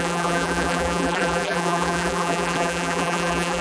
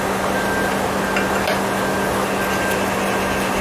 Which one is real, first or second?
second